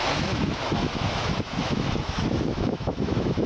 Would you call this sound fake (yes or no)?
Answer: yes